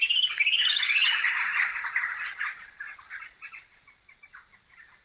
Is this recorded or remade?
recorded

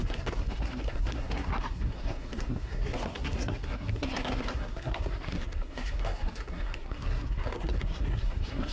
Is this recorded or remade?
remade